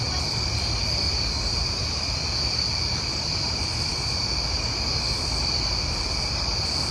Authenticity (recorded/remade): recorded